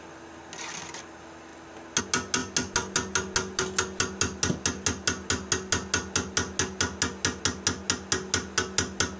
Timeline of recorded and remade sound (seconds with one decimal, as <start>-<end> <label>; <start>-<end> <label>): 0.0-9.2 recorded